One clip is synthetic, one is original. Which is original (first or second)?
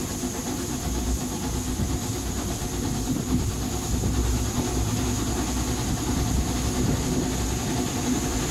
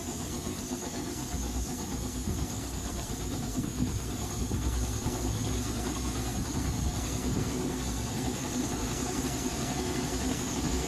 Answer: first